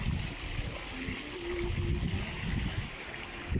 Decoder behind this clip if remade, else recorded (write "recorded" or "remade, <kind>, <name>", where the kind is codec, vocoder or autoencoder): recorded